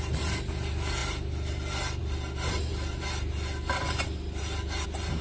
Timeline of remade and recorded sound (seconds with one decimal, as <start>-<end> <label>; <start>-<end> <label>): 0.0-5.2 recorded